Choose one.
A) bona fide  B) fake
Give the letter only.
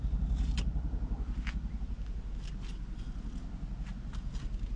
A